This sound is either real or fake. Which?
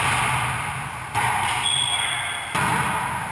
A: real